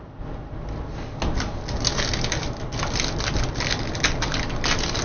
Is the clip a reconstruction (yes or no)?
no